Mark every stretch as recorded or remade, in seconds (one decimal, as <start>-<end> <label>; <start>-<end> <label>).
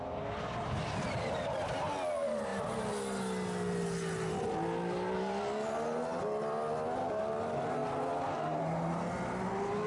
0.0-9.9 recorded